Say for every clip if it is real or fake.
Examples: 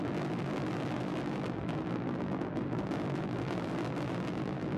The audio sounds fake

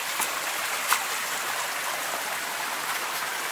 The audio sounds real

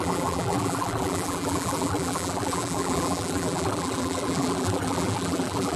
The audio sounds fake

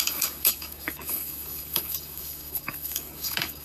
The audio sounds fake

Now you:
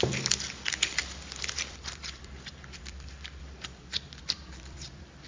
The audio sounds fake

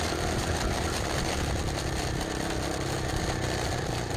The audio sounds real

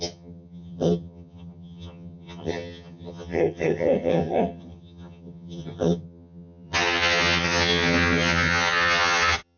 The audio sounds fake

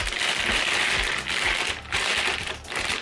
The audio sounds real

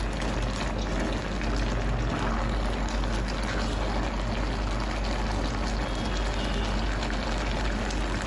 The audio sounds real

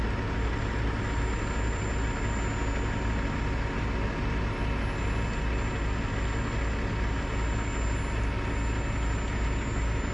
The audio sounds real